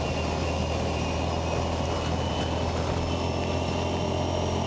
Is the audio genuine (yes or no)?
yes